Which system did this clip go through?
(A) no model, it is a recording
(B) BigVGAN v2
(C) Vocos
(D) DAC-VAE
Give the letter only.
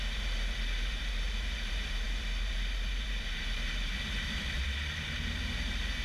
B